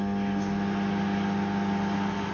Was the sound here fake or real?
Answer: real